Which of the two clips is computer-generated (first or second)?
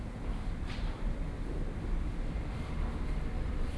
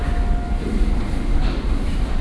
first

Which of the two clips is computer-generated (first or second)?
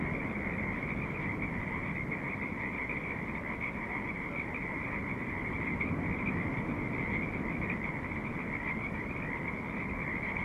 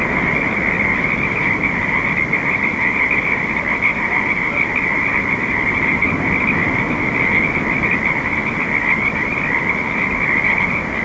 first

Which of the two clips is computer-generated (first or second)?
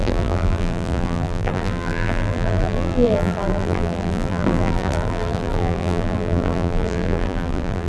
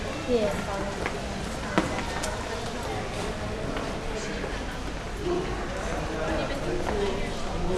first